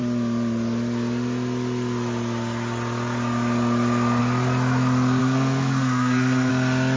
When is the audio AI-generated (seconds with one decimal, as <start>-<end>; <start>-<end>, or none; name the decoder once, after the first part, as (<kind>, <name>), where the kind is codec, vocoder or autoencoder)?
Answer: 5.2-6.5 (codec, SNAC)